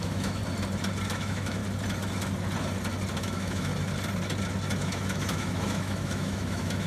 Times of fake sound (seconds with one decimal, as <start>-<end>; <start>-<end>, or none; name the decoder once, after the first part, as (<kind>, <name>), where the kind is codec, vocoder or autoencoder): 0.0-0.4 (autoencoder, DAC-VAE); 1.1-1.6; 3.1-3.7; 4.8-6.9